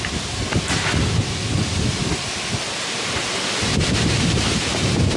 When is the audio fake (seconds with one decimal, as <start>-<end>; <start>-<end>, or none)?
none